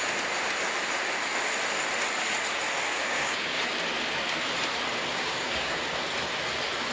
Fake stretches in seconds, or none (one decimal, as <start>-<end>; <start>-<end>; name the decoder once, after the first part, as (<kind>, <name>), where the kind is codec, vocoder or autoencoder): 3.0-3.6 (codec, DAC); 5.1-5.8